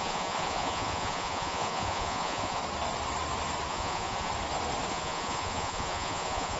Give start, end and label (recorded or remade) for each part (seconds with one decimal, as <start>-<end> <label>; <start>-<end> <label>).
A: 0.0-2.6 remade; 2.6-3.7 recorded; 3.7-4.3 remade; 4.3-4.9 recorded; 4.9-6.6 remade

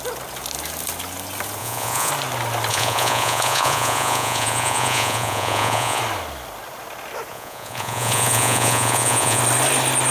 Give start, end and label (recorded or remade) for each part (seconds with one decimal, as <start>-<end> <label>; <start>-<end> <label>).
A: 0.0-1.6 recorded; 1.6-2.1 remade; 2.1-2.7 recorded; 2.7-6.0 remade; 6.0-7.3 recorded; 7.3-9.4 remade; 9.4-10.1 recorded

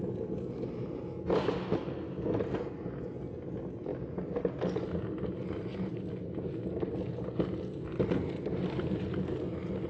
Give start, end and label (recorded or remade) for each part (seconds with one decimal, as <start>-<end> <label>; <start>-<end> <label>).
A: 0.0-9.9 recorded

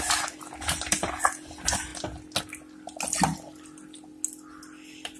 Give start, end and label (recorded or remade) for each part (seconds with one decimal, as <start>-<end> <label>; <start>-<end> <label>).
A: 0.0-5.2 recorded

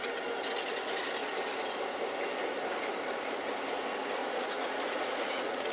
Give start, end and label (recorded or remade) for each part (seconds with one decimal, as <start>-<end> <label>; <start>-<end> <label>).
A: 0.0-4.2 recorded; 4.2-5.7 remade

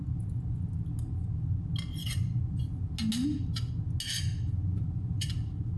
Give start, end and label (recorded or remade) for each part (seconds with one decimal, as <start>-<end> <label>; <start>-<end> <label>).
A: 0.0-0.7 remade; 0.7-2.0 recorded; 2.0-2.8 remade; 2.8-4.5 recorded; 4.5-5.3 remade; 5.3-5.8 recorded